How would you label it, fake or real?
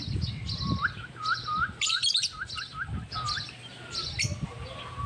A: real